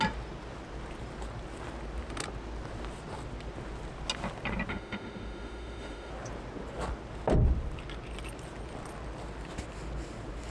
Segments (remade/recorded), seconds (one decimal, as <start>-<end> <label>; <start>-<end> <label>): 0.0-4.7 recorded; 4.7-6.1 remade; 6.1-10.5 recorded